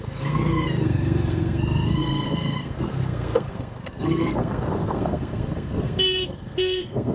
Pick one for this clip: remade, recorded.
remade